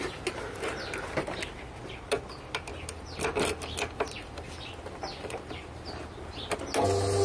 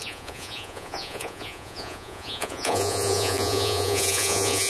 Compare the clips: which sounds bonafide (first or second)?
first